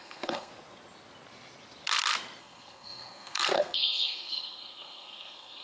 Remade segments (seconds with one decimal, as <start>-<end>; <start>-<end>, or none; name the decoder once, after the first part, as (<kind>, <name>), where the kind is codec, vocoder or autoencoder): 0.0-0.5 (codec, SNAC); 2.4-5.6